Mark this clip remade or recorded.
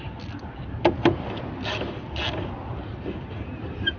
recorded